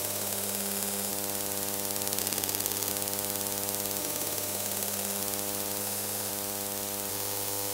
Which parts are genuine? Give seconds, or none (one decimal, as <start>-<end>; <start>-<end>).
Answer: 1.1-2.2; 2.9-4.0; 5.2-5.8; 6.3-7.1